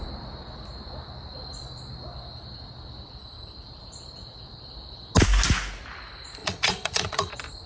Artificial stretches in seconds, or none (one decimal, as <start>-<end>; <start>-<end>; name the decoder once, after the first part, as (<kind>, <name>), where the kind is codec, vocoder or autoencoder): 6.4-7.3 (vocoder, Vocos)